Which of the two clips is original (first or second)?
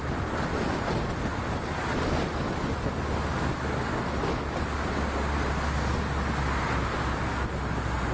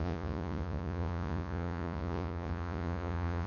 first